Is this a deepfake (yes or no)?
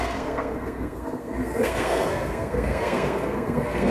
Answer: yes